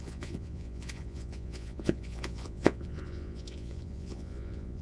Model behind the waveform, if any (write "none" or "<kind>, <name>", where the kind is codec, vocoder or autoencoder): vocoder, Vocos